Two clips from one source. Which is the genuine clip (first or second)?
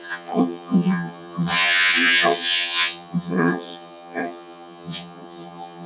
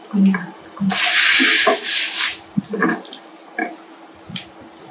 second